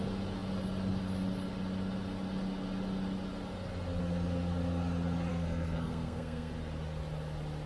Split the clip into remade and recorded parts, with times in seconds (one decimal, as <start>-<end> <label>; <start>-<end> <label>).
0.0-5.3 recorded; 5.3-6.5 remade; 6.5-7.7 recorded